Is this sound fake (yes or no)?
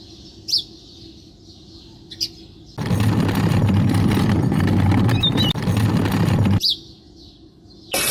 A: no